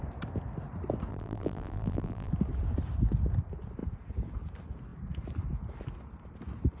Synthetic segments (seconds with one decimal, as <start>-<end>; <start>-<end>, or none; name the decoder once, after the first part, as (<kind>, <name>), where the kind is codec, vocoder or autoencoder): 1.1-2.3 (vocoder, BigVGAN v2)